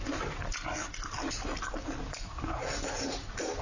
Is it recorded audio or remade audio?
recorded